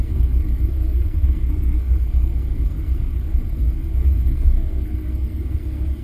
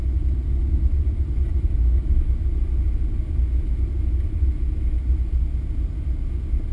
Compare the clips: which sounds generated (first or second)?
first